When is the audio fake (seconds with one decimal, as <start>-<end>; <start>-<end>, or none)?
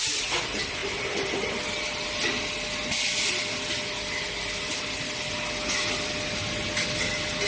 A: none